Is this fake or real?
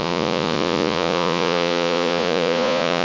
fake